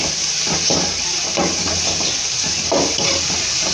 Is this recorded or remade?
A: recorded